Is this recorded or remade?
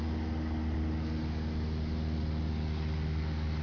recorded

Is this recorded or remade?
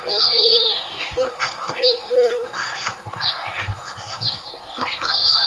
remade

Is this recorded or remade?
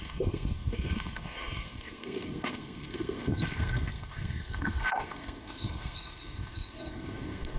remade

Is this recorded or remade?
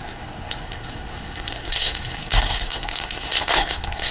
remade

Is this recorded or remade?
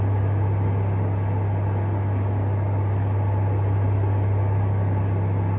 recorded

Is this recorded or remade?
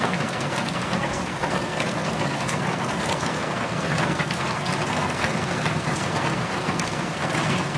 remade